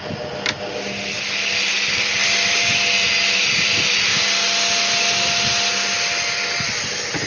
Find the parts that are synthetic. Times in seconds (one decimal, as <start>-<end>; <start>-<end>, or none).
none